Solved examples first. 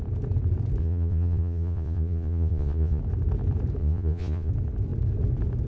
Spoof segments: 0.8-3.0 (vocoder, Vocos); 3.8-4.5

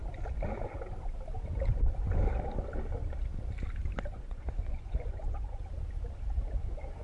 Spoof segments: 4.1-5.6 (vocoder, Vocos)

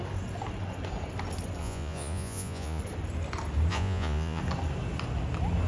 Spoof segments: 1.6-2.8 (vocoder, Vocos); 3.7-4.4

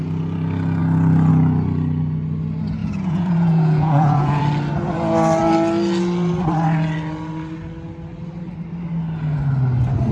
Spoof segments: 2.8-4.4 (vocoder, Vocos)

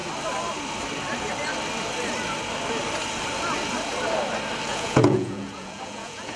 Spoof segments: 4.7-6.4 (vocoder, Vocos)